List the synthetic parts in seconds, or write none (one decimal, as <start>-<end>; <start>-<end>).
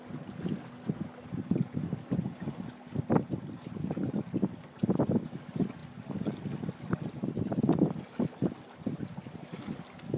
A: none